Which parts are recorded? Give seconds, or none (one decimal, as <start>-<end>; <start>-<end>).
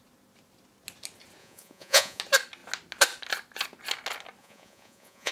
0.0-1.4; 2.2-4.4